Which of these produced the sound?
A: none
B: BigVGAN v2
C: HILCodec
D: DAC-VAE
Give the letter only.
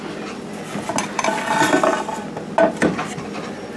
A